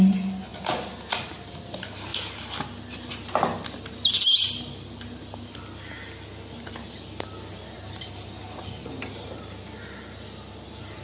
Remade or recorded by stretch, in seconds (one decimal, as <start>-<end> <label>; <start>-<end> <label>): 0.0-11.0 recorded